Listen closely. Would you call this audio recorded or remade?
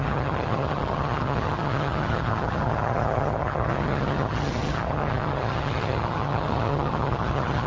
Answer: remade